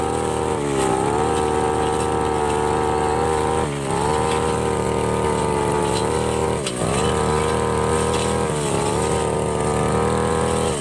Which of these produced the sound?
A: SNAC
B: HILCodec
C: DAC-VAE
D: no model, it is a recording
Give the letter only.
D